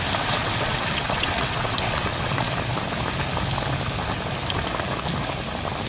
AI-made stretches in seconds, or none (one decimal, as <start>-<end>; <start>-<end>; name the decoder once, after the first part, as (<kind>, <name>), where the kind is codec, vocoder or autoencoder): 0.4-2.5 (vocoder, WaveNeXt)